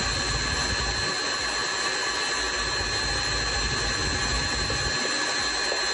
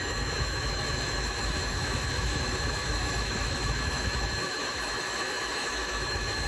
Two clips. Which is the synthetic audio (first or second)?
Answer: second